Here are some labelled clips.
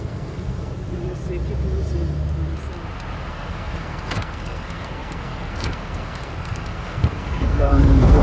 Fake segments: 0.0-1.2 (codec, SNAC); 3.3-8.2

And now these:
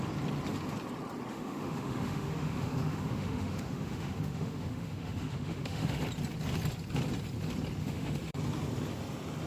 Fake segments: 1.3-6.0 (autoencoder, DAC-VAE); 7.8-8.4

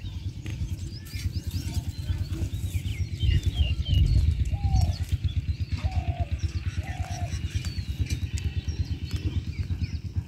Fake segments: 2.9-3.8 (vocoder, BigVGAN v2)

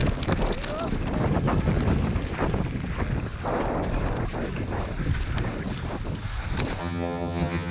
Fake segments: 6.8-7.7 (vocoder, HiFi-GAN)

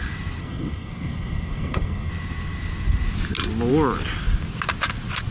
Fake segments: 0.4-2.1 (codec, SNAC)

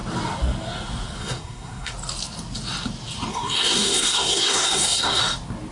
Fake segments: 1.2-1.9 (codec, SNAC); 3.3-5.2

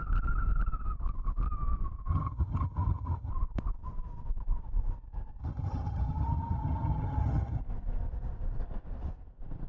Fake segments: 2.1-3.3 (vocoder, HiFi-GAN); 5.4-7.6